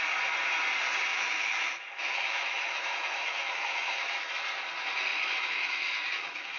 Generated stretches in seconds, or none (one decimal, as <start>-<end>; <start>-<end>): 1.1-4.3; 5.1-6.6